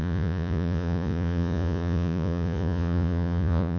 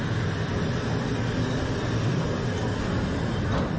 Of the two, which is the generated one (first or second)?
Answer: first